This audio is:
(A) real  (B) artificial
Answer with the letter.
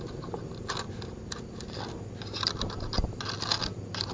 A